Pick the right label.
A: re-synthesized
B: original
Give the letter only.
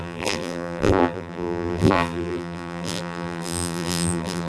A